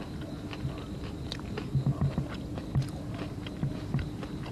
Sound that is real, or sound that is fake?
real